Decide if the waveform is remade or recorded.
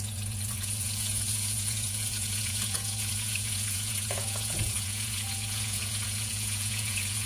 remade